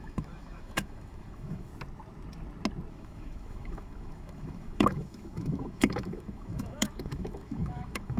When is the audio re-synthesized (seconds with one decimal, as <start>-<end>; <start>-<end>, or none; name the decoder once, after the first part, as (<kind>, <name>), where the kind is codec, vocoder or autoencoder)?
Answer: 0.0-1.7 (autoencoder, DAC-VAE); 2.9-8.2